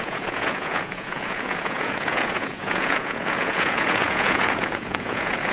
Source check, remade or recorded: remade